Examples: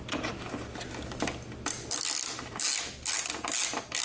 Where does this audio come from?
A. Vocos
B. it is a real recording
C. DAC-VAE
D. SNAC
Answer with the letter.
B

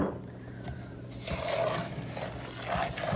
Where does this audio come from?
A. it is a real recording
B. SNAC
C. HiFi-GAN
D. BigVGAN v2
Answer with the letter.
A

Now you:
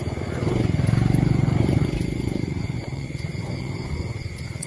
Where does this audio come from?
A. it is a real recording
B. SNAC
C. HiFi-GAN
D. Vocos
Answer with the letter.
D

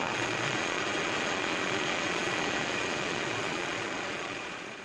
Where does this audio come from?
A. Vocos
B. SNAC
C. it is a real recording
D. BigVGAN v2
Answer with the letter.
A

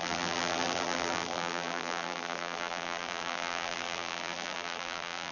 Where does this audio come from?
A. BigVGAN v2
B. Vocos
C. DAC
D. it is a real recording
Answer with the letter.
A